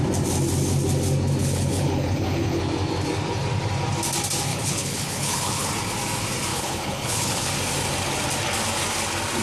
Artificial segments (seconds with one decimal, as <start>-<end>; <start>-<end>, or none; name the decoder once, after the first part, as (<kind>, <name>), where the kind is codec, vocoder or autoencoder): 1.4-2.6 (codec, HILCodec); 4.5-5.7; 6.5-7.5